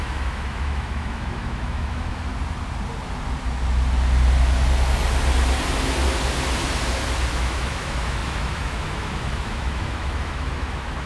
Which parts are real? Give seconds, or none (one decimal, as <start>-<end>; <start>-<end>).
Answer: 2.3-7.3